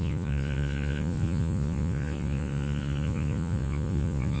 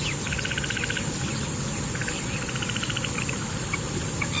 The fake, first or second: first